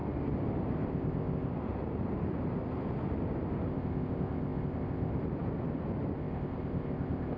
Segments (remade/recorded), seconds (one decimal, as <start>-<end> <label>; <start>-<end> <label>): 0.0-0.9 recorded; 0.9-1.5 remade; 1.5-3.7 recorded; 3.7-5.1 remade; 5.1-6.2 recorded; 6.2-7.4 remade